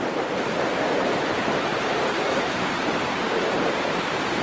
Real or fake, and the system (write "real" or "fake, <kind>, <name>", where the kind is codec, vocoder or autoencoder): fake, vocoder, BigVGAN v2